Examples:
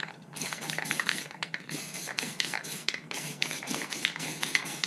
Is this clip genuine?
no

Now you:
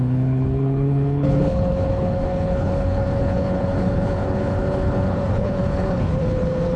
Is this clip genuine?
no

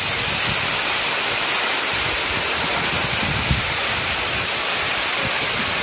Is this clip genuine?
yes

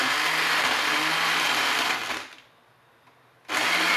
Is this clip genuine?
yes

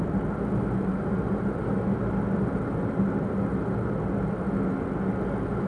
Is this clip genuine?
yes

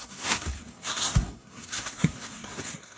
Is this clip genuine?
no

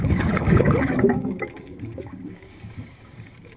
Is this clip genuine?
no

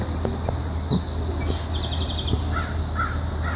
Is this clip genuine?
yes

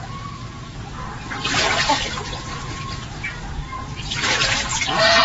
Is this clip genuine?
no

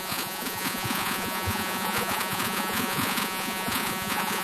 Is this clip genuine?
no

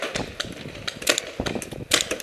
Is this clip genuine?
yes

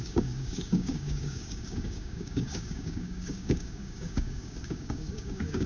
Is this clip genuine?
no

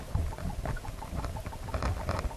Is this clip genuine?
yes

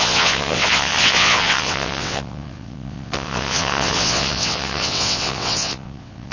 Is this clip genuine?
no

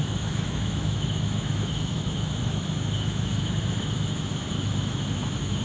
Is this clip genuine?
no